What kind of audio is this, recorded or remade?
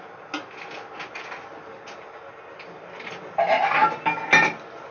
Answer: recorded